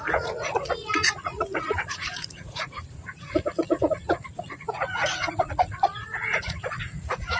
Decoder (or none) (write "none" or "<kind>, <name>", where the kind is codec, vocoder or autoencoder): vocoder, Vocos